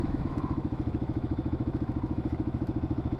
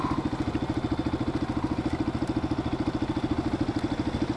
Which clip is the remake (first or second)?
first